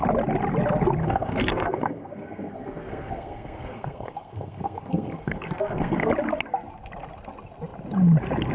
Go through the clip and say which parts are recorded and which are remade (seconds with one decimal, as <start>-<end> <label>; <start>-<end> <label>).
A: 0.0-1.0 recorded; 1.0-6.1 remade; 6.1-8.5 recorded